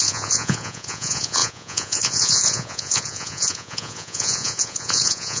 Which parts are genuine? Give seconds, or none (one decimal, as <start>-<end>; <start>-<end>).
none